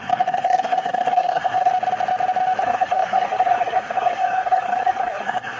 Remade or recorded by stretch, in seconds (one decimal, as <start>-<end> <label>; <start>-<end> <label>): 0.0-1.7 remade; 1.7-2.6 recorded; 2.6-5.6 remade